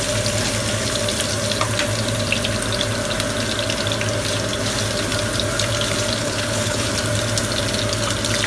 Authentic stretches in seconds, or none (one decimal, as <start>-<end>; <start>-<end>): 0.0-6.2; 6.9-8.5

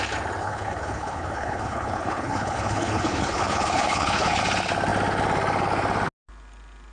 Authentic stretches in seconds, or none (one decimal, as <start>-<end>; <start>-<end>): 0.0-0.4; 4.4-6.9

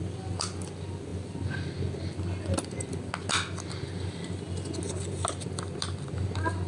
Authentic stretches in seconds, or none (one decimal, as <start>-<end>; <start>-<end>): 0.0-6.7

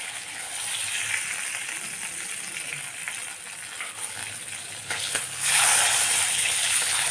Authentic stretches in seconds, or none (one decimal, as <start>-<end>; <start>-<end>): 0.5-3.8; 4.2-4.8; 5.7-6.3